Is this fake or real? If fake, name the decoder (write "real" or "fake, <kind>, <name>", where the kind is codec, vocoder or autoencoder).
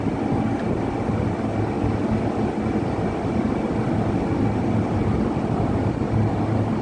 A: real